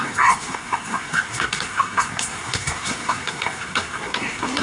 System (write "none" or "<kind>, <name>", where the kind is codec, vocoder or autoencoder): codec, SNAC